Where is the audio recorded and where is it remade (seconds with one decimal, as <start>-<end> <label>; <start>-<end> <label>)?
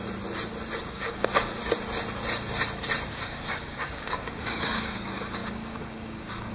0.0-0.9 recorded; 0.9-1.6 remade; 1.6-3.1 recorded; 3.1-6.5 remade